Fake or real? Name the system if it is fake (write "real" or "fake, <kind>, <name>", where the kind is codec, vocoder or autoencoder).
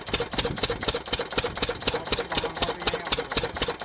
real